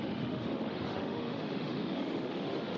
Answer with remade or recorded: remade